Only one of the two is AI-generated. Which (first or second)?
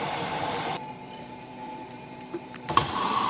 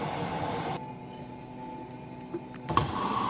first